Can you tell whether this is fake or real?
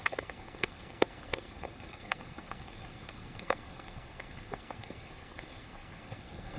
fake